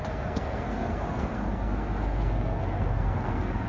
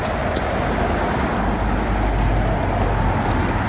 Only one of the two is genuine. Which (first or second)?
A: second